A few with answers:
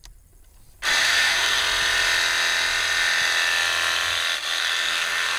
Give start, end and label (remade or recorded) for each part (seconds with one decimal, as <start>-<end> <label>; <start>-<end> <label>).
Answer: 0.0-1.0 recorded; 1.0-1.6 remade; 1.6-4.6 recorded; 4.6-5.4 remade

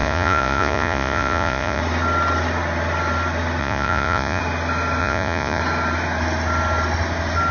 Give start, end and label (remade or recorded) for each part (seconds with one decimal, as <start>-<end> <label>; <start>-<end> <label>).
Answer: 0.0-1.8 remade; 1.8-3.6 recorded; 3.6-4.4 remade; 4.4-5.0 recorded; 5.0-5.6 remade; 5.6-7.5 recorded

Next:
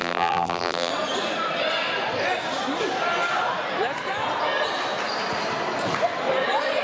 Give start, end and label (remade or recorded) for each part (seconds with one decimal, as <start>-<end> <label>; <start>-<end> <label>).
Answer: 0.0-0.9 remade; 0.9-6.8 recorded